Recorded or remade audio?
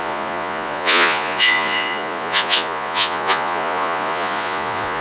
remade